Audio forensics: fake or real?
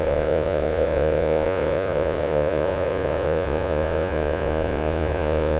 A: fake